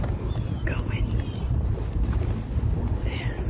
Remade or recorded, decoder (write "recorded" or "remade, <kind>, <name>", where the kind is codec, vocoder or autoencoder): recorded